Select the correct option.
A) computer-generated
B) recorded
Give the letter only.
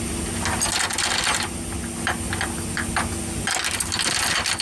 B